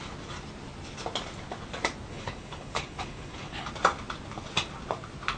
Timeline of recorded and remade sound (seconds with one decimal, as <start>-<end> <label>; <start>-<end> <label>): 0.0-2.1 recorded; 2.1-3.7 remade; 3.7-5.4 recorded